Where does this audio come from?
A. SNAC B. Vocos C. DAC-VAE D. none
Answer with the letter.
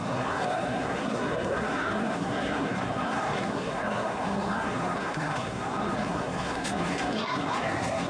A